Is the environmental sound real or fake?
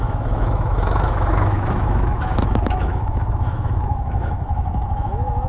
fake